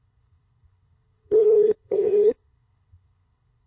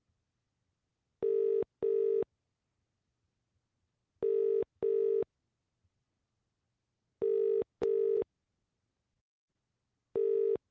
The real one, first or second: second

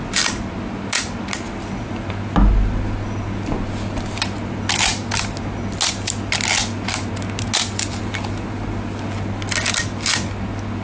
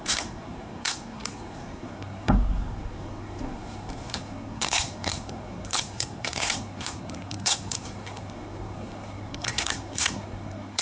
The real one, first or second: first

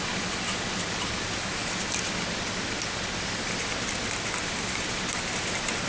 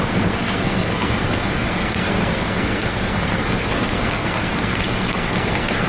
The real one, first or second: first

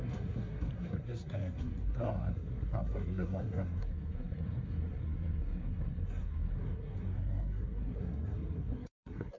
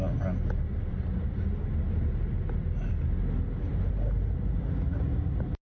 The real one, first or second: second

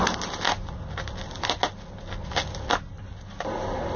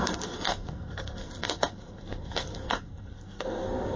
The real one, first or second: first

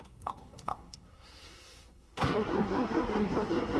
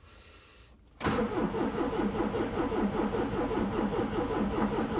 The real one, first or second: second